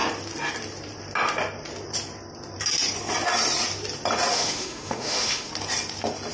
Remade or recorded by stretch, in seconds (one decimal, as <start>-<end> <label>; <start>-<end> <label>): 0.0-4.3 recorded; 4.3-5.5 remade; 5.5-6.3 recorded